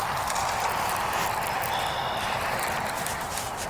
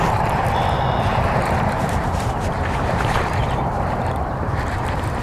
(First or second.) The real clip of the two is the first